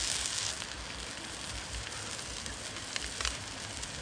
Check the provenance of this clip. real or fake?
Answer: real